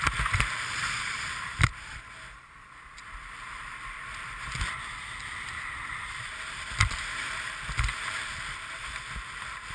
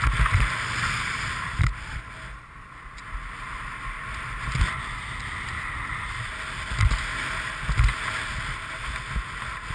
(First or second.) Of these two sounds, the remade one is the first